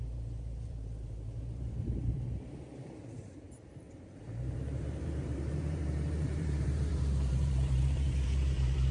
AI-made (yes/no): yes